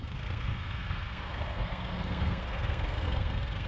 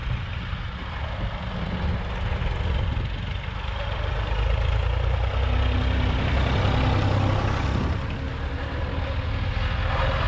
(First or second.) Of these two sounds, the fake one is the first